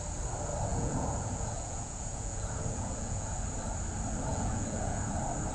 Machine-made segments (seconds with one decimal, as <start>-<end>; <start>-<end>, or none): 0.7-3.4; 4.3-5.1